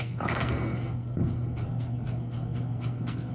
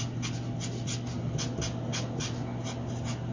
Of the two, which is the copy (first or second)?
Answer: first